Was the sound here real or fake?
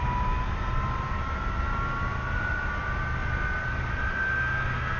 real